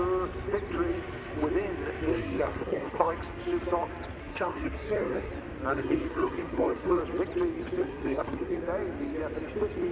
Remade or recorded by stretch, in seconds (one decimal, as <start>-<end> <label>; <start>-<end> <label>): 0.0-2.1 recorded; 2.1-3.1 remade; 3.1-4.2 recorded; 4.2-5.3 remade; 5.3-5.7 recorded; 5.7-7.0 remade; 7.0-7.8 recorded; 7.8-8.6 remade; 8.6-9.9 recorded